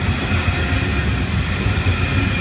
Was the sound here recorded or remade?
recorded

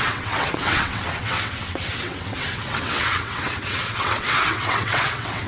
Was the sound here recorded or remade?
remade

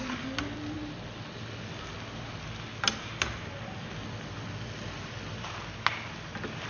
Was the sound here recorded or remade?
recorded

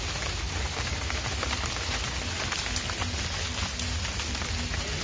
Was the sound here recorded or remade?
recorded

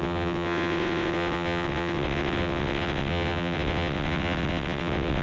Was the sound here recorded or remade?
remade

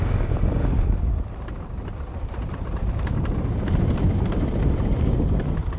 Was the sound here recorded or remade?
recorded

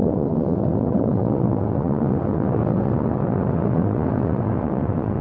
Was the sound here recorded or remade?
remade